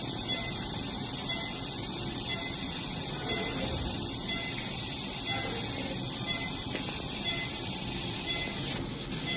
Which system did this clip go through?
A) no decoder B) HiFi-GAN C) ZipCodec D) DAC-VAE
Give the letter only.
A